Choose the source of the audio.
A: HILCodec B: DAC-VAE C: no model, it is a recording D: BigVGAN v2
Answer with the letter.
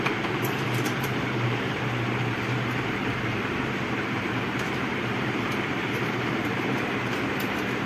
D